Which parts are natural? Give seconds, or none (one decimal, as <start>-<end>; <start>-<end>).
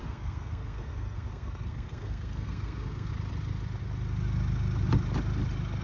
3.1-5.8